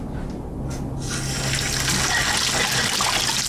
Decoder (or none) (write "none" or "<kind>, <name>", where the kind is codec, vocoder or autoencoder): none